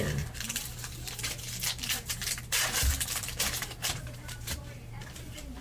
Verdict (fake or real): fake